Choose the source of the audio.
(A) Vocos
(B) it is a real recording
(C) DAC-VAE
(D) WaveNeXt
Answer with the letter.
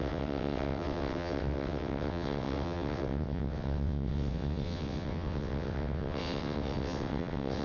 D